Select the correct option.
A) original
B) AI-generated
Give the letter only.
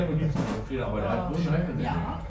A